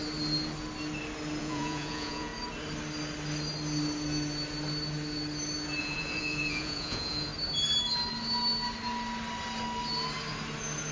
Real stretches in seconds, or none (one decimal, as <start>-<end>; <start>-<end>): 0.0-1.4; 2.3-5.8; 7.3-10.9